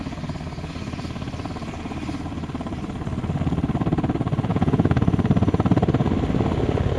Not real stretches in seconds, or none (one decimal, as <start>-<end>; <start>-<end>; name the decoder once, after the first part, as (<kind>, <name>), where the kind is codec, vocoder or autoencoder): 4.5-5.0 (vocoder, Vocos)